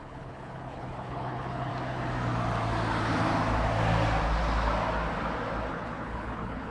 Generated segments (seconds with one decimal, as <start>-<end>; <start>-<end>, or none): 0.0-1.7; 5.7-6.7